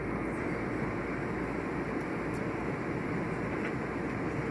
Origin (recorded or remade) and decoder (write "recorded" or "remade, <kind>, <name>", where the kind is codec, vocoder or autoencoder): recorded